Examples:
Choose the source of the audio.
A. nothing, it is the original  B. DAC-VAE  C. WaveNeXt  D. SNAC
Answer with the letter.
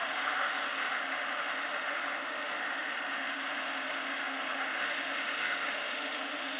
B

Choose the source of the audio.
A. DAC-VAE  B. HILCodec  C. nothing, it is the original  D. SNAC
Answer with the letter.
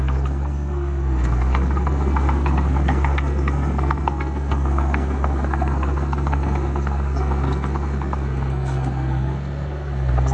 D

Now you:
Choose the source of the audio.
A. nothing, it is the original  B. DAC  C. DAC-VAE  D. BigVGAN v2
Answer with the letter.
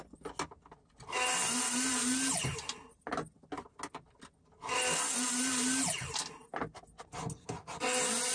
A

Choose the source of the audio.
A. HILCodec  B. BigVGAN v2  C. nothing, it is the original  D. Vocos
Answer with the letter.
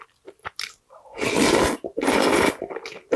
C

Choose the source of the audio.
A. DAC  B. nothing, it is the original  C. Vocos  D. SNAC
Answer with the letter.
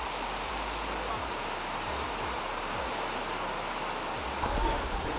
B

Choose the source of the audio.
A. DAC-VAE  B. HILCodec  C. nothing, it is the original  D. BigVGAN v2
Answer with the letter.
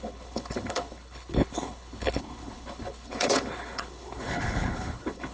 B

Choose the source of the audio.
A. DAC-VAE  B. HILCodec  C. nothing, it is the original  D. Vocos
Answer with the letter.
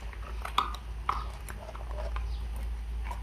C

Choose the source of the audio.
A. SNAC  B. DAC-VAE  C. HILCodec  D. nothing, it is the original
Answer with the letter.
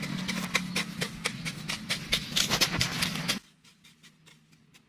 D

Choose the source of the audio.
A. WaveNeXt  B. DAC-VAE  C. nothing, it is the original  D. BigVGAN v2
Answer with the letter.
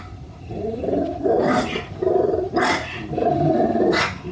C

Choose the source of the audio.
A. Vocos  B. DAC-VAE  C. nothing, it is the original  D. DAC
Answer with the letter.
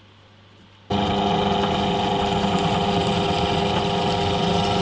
C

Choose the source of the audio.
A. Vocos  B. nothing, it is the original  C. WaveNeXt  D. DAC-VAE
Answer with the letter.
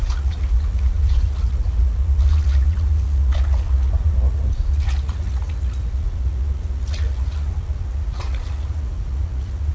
A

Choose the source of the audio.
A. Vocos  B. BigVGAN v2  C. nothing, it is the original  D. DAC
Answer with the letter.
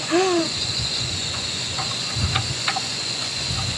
A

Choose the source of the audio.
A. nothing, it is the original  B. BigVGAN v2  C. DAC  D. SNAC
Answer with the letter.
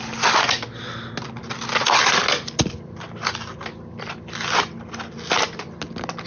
A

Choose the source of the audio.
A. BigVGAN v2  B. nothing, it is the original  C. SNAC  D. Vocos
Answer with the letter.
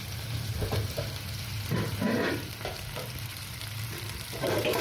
A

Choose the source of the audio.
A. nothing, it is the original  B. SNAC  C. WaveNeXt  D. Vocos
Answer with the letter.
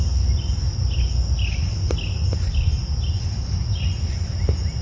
A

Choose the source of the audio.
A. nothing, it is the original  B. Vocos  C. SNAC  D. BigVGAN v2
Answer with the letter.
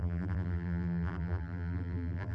D